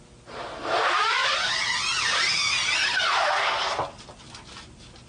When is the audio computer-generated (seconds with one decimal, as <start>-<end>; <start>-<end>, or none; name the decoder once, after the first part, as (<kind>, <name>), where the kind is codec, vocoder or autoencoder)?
none